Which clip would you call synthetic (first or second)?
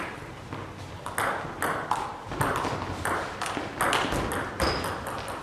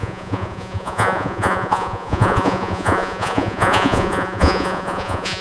second